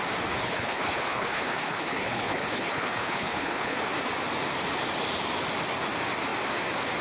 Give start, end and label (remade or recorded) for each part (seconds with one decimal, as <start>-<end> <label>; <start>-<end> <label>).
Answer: 0.0-0.4 recorded; 0.4-3.8 remade; 3.8-7.0 recorded